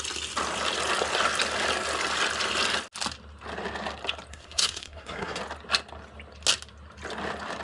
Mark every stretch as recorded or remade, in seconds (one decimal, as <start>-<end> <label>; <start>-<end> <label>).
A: 0.0-4.3 recorded; 4.3-5.4 remade; 5.4-7.6 recorded